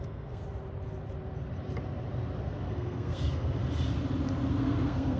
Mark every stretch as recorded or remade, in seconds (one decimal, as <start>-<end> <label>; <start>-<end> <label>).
0.0-0.4 remade; 0.4-2.7 recorded; 2.7-3.6 remade; 3.6-4.5 recorded; 4.5-5.2 remade